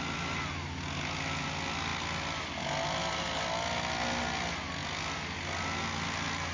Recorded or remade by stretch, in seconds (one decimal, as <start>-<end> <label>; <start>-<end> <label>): 0.0-6.5 recorded